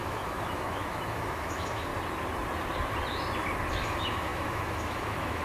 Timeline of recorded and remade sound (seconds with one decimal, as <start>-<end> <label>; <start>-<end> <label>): 0.0-1.9 remade; 1.9-3.7 recorded; 3.7-5.4 remade